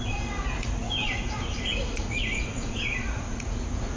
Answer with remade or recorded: remade